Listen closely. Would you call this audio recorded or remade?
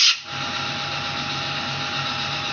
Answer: recorded